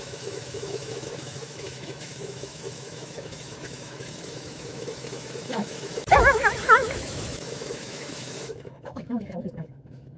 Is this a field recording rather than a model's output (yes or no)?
no